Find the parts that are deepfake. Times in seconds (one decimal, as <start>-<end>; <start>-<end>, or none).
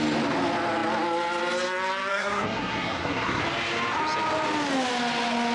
2.1-3.4